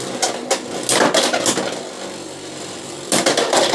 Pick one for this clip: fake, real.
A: real